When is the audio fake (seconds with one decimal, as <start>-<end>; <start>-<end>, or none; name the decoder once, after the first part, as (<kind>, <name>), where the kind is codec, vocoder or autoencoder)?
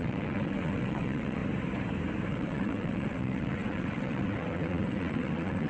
0.0-1.4 (vocoder, WaveNeXt); 2.3-5.7